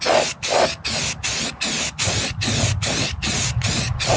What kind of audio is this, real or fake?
real